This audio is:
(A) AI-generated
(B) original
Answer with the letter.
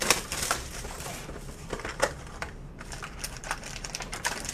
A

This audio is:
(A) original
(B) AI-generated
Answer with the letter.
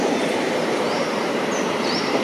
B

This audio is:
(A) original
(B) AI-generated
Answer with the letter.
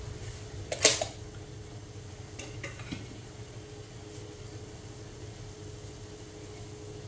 A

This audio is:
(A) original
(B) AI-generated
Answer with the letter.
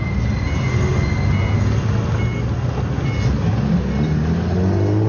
A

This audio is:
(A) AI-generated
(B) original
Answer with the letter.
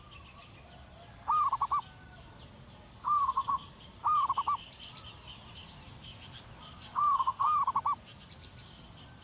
B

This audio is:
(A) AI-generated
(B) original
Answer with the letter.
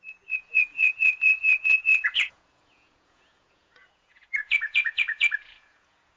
A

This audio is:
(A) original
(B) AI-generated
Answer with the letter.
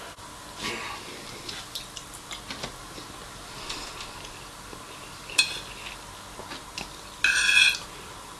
A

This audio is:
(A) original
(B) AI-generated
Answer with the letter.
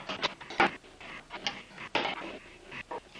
A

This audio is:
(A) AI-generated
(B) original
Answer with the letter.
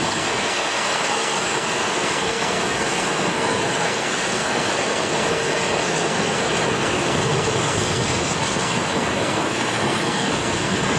A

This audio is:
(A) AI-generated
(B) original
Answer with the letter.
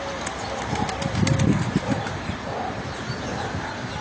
B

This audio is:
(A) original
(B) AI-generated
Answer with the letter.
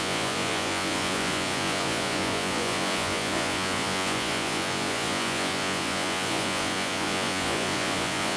B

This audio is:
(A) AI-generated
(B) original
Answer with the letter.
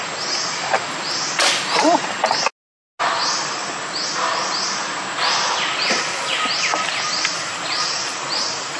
B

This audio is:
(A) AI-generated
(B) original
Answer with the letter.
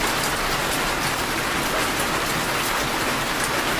B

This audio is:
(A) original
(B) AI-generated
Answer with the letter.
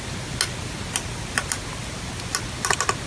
A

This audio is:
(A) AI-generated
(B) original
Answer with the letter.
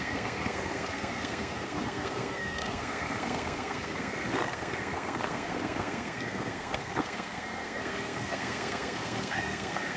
A